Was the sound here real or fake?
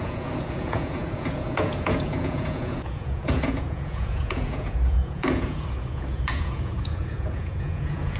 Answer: fake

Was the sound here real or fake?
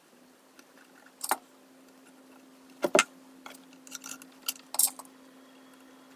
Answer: real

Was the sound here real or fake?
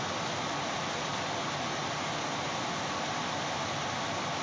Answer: real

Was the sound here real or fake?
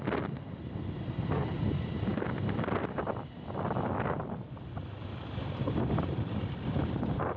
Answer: real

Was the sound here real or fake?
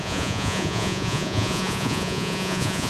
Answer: fake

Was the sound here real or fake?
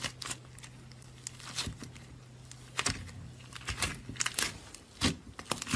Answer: real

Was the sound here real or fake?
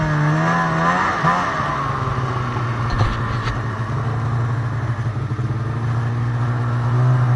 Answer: real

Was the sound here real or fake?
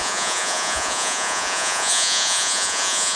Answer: fake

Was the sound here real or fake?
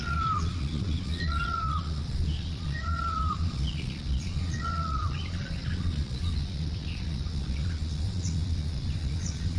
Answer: fake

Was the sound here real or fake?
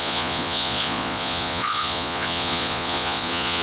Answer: fake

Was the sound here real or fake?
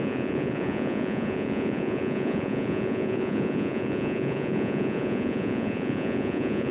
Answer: fake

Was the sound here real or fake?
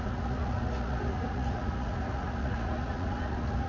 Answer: fake